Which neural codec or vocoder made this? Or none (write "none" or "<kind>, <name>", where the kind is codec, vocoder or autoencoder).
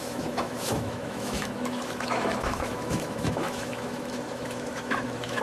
autoencoder, DAC-VAE